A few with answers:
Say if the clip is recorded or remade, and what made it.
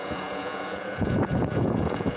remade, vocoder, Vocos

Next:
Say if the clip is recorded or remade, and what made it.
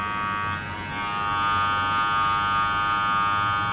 recorded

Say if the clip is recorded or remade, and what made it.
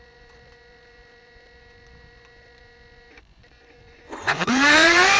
remade, vocoder, Vocos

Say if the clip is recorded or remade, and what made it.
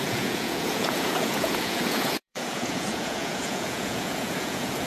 remade, vocoder, Vocos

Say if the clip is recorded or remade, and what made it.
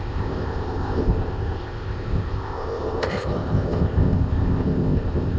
remade, codec, ZipCodec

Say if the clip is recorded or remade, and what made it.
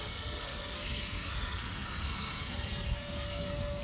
remade, codec, SNAC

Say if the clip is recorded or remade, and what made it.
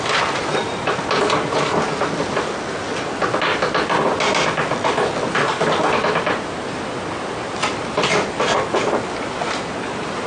recorded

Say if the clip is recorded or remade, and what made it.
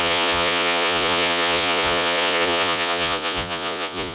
remade, vocoder, Vocos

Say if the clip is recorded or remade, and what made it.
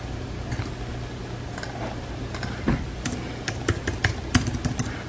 recorded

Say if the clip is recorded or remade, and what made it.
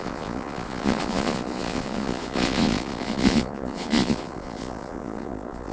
remade, vocoder, Vocos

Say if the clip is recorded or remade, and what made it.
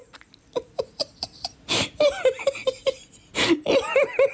recorded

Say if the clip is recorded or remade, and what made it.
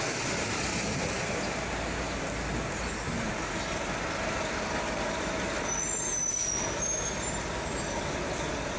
recorded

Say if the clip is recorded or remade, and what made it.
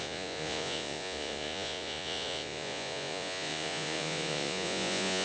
remade, vocoder, Vocos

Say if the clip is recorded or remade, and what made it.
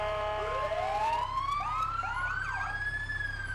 remade, vocoder, BigVGAN v2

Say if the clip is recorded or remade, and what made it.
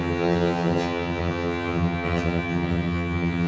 remade, vocoder, HiFi-GAN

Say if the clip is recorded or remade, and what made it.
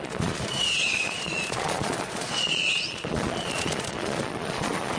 remade, vocoder, Vocos